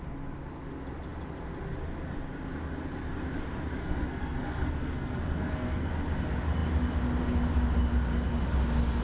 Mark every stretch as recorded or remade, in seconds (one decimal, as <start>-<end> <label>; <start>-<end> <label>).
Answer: 0.0-3.8 recorded; 3.8-5.9 remade; 5.9-9.0 recorded